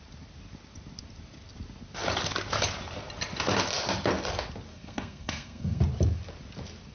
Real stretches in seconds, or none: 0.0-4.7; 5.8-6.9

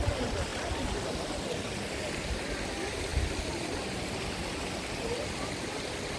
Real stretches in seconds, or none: 0.0-6.2

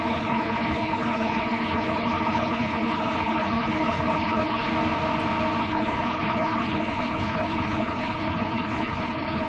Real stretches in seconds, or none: 4.7-5.6